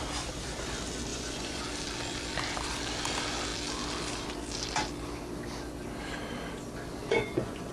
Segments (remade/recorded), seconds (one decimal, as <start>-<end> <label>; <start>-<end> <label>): 0.0-1.1 recorded; 1.1-1.6 remade; 1.6-7.0 recorded; 7.0-7.7 remade